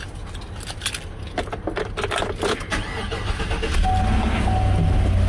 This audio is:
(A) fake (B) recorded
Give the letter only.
B